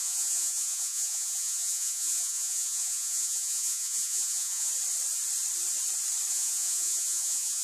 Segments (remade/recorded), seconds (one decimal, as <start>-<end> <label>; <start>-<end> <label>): 0.0-4.7 remade; 4.7-6.3 recorded; 6.3-7.6 remade